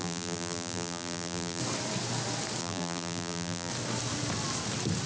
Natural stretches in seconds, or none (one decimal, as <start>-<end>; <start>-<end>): 1.6-2.6; 3.7-5.1